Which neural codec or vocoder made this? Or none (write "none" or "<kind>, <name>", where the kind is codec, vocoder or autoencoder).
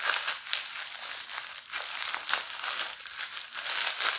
none